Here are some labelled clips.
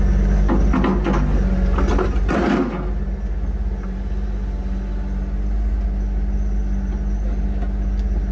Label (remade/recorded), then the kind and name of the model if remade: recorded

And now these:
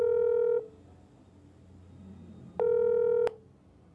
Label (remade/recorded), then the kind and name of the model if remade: recorded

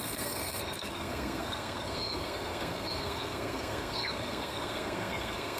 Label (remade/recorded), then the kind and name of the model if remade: remade, codec, SNAC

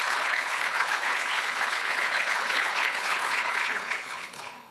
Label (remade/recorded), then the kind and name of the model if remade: remade, codec, HILCodec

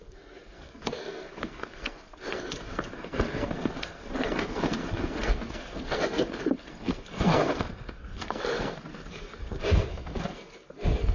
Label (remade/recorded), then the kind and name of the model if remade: remade, codec, SNAC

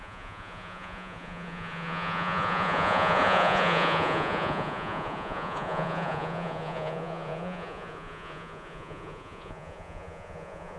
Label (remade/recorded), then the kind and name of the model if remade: remade, vocoder, Vocos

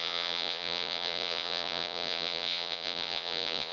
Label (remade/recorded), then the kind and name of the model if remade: remade, vocoder, Vocos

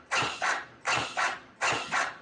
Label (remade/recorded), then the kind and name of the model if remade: recorded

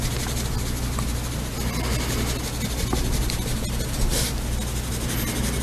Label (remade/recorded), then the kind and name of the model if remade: recorded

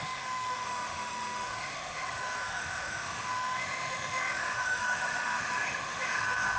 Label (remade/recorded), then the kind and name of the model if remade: remade, autoencoder, DAC-VAE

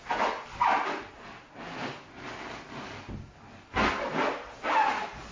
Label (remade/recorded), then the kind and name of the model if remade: recorded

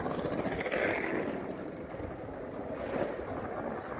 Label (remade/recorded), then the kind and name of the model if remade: recorded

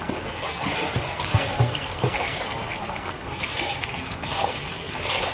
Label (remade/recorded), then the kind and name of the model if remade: remade, codec, SNAC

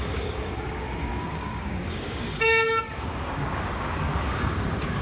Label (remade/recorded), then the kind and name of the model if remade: remade, codec, DAC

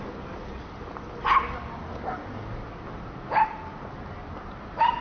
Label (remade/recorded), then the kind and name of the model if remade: recorded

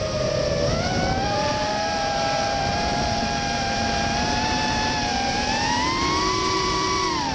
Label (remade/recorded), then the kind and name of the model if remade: remade, vocoder, BigVGAN v2